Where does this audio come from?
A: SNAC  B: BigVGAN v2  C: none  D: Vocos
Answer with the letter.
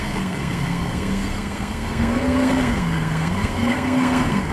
A